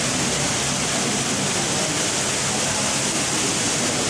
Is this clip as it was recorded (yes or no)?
yes